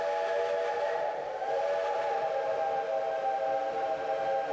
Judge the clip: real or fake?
real